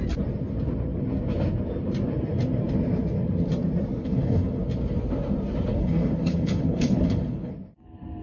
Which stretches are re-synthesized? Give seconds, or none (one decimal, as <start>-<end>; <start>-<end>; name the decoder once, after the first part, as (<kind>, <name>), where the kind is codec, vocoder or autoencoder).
4.0-4.6 (codec, HILCodec); 5.7-7.5